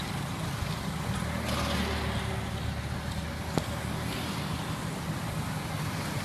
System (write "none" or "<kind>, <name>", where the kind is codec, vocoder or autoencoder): none